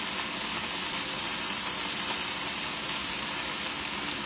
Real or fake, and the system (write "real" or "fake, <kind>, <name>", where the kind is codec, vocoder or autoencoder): real